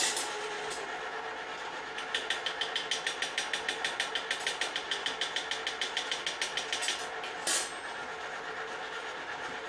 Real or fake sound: real